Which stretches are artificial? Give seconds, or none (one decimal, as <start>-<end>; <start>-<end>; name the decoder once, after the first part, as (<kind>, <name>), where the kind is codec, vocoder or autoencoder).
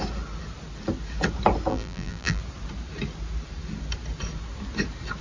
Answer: 1.7-2.4 (vocoder, BigVGAN v2)